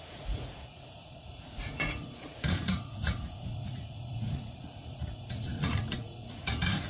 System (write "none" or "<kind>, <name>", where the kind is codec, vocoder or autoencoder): vocoder, Vocos